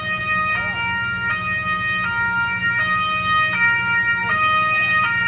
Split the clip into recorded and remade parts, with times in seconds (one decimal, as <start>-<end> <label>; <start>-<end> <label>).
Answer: 0.0-5.3 recorded